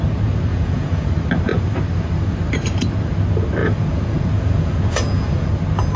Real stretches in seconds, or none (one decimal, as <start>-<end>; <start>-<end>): 0.0-0.5; 1.1-3.6; 5.5-6.0